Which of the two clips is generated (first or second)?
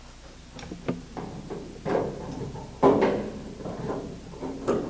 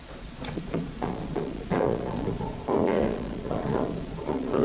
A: second